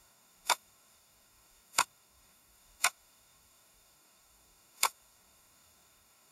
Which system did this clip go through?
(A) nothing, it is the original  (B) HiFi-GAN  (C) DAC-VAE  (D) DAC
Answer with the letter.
D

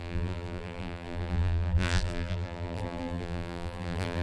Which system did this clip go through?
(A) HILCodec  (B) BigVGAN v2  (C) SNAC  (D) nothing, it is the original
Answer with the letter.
B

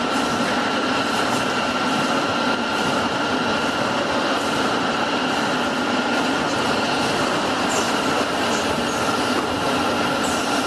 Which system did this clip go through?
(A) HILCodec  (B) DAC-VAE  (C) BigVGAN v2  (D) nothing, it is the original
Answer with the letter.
D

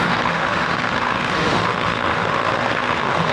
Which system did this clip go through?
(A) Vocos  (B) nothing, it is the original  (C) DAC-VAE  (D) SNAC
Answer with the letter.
C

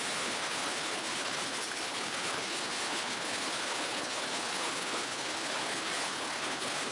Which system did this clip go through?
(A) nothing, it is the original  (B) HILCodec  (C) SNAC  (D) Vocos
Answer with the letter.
B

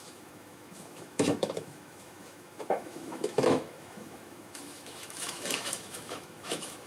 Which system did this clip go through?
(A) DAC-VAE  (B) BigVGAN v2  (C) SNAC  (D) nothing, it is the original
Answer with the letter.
A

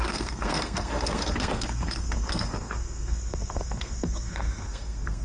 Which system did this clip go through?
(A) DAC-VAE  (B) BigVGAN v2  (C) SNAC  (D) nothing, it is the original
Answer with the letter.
C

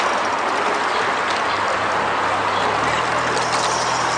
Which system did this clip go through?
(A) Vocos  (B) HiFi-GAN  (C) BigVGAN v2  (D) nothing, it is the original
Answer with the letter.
D